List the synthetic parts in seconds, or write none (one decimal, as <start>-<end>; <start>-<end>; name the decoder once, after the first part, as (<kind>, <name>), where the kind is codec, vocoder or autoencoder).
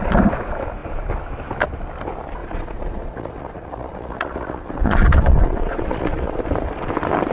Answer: 2.4-6.4 (vocoder, Vocos)